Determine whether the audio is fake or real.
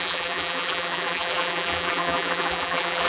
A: fake